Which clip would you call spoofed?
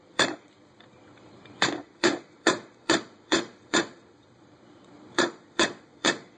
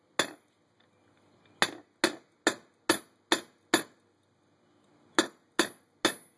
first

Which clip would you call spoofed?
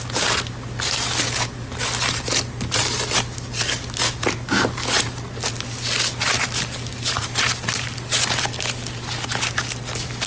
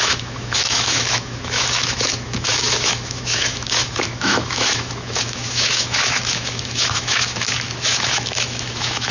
second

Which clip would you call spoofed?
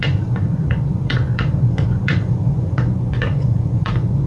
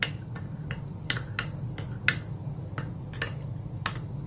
first